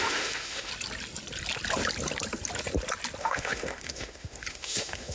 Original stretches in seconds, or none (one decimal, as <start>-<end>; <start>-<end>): 0.7-3.2